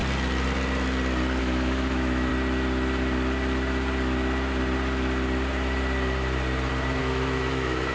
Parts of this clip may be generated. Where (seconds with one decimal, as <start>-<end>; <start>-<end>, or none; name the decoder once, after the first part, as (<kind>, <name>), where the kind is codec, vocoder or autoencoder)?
1.4-2.3 (autoencoder, DAC-VAE); 7.0-7.9